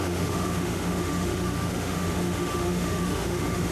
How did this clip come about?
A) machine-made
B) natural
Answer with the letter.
A